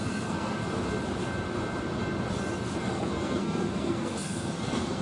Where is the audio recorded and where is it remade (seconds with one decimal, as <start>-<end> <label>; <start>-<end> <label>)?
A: 0.0-0.6 remade; 0.6-2.8 recorded; 2.8-5.0 remade